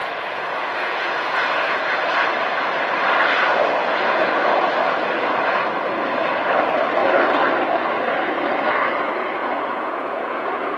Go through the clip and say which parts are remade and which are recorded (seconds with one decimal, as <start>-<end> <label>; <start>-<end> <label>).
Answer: 0.0-2.0 remade; 2.0-3.8 recorded; 3.8-4.7 remade; 4.7-9.4 recorded; 9.4-10.8 remade